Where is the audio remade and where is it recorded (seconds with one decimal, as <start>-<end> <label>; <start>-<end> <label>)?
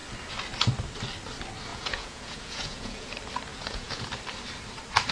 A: 0.0-1.7 recorded; 1.7-3.1 remade; 3.1-3.5 recorded; 3.5-4.1 remade; 4.1-5.1 recorded